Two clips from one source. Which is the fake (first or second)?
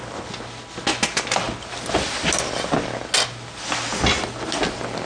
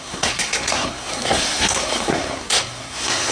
second